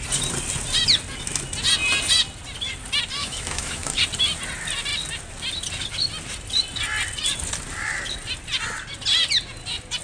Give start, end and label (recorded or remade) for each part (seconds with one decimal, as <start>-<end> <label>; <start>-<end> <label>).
0.0-3.2 recorded; 3.2-4.0 remade; 4.0-10.0 recorded